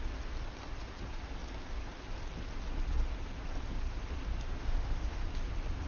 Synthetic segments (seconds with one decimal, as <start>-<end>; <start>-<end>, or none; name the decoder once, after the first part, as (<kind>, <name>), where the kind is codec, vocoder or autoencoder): 4.6-5.2 (autoencoder, DAC-VAE)